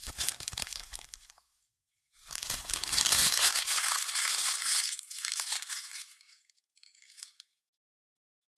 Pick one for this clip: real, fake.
fake